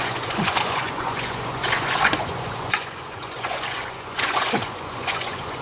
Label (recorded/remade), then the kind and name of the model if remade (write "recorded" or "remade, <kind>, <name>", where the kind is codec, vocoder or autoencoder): remade, vocoder, Vocos